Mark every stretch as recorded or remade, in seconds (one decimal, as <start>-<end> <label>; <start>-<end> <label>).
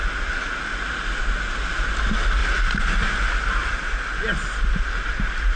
0.0-5.6 recorded